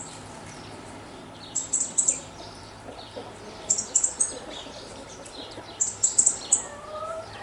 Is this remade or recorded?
remade